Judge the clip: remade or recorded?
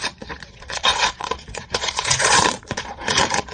remade